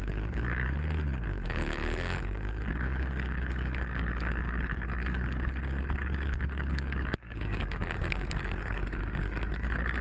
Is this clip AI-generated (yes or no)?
yes